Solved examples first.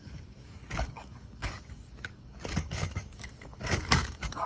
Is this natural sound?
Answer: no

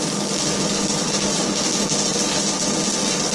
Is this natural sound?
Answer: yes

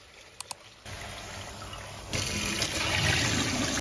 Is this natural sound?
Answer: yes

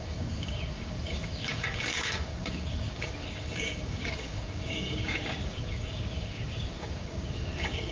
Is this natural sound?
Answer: no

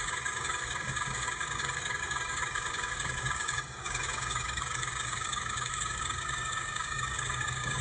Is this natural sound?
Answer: no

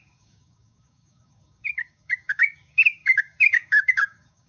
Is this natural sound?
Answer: no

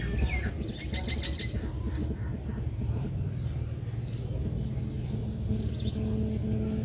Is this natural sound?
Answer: yes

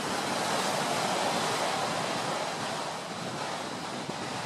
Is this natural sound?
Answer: yes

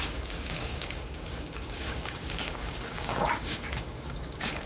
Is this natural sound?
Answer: no